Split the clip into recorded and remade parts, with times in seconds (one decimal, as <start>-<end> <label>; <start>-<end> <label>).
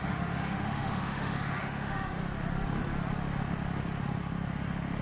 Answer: 0.0-2.2 remade; 2.2-5.0 recorded